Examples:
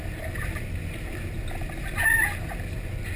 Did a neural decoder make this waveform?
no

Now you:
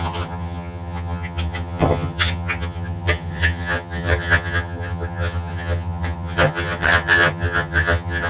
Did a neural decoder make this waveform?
yes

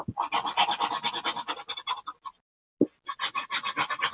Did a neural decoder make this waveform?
no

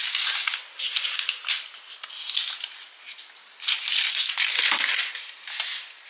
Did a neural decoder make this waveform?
no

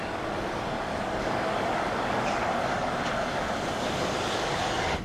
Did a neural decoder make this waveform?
yes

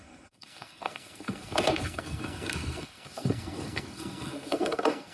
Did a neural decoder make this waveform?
yes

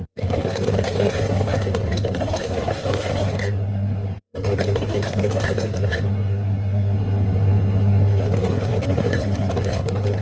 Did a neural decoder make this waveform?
yes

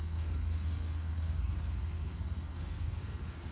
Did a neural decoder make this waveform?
yes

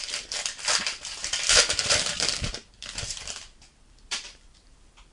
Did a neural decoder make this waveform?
yes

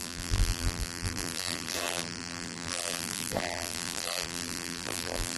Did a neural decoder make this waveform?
yes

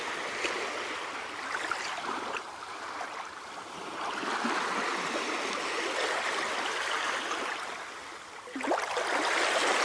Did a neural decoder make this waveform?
no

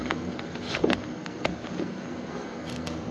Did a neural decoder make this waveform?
yes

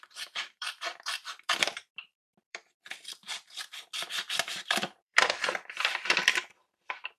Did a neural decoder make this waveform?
yes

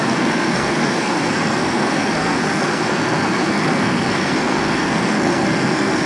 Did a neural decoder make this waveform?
yes